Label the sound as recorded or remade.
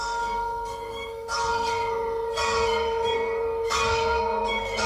remade